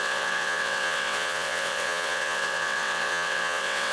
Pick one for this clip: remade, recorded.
remade